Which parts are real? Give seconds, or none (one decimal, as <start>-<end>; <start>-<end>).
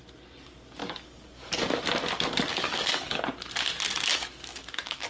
0.0-0.8; 1.7-2.5; 3.2-4.1